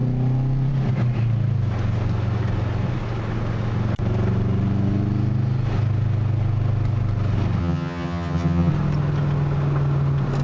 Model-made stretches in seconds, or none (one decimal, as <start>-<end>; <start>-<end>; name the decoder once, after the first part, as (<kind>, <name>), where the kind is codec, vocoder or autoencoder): 7.6-8.7 (vocoder, HiFi-GAN)